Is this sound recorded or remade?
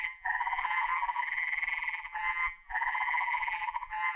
remade